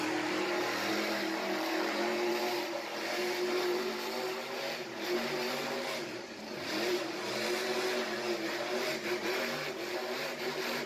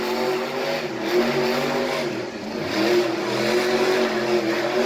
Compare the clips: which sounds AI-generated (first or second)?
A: first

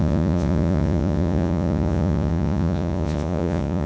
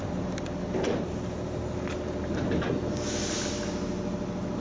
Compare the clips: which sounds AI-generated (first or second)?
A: first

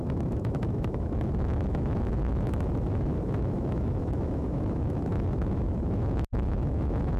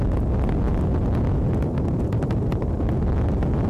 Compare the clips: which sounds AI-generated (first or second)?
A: first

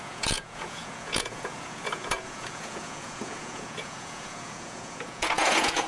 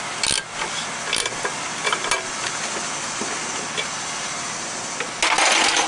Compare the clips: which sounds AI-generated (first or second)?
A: first